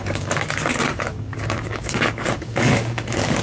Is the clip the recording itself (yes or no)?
no